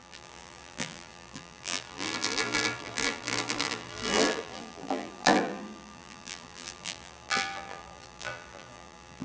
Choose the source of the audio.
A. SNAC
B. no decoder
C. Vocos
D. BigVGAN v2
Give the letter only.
D